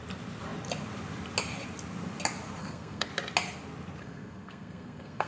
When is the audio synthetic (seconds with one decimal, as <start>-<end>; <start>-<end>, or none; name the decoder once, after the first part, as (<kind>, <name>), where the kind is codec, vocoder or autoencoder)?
2.6-3.1 (codec, SNAC); 4.0-5.3

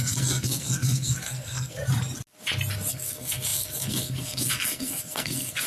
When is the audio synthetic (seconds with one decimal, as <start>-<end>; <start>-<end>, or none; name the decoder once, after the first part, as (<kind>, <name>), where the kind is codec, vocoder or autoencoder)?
0.0-1.8 (codec, SNAC); 2.9-5.7

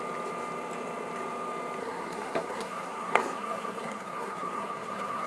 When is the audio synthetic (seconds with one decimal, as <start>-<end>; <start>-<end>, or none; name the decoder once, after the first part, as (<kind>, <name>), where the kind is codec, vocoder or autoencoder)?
1.8-5.3 (codec, SNAC)

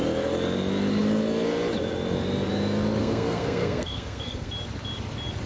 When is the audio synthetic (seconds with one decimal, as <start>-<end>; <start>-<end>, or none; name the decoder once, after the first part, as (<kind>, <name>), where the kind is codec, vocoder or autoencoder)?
3.0-4.5 (codec, SNAC)

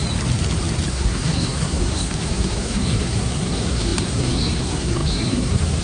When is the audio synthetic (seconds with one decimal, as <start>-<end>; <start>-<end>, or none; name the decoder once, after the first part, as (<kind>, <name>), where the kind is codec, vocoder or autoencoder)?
0.9-5.8 (codec, SNAC)

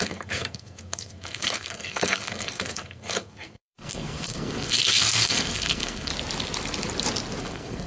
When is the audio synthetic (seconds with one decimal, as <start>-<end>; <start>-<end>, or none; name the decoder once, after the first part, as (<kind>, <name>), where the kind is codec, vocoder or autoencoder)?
0.0-6.1 (codec, SNAC); 7.4-7.9